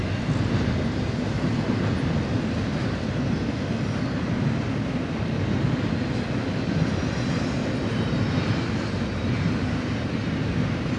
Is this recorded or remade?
recorded